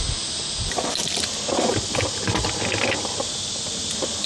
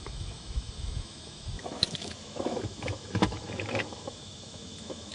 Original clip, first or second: first